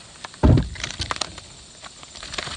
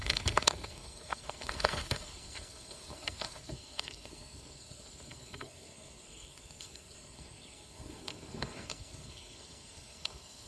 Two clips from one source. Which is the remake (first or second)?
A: second